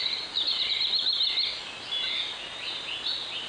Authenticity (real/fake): real